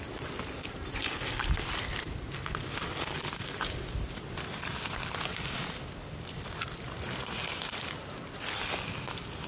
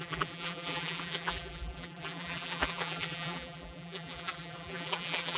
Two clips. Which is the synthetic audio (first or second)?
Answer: second